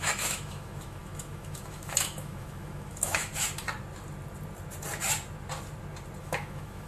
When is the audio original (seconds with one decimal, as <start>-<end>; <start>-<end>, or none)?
3.3-6.2